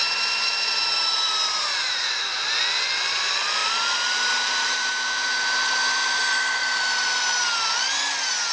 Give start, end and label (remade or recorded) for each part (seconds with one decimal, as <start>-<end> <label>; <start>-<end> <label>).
0.0-2.6 remade; 2.6-3.6 recorded; 3.6-5.3 remade; 5.3-6.6 recorded; 6.6-7.2 remade; 7.2-8.5 recorded